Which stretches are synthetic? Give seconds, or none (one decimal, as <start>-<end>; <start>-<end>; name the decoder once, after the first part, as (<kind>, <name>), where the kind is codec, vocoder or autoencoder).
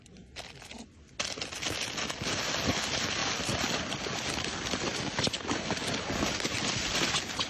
none